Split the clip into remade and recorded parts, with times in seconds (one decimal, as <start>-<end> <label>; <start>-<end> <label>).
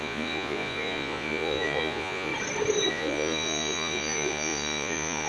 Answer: 0.0-2.3 remade; 2.3-2.9 recorded; 2.9-5.3 remade